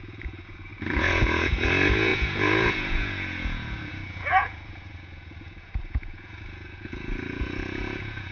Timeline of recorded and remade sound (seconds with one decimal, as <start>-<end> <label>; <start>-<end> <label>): 0.0-8.3 remade